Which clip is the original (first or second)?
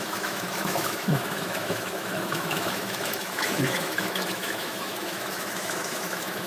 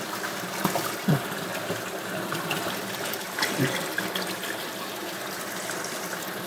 second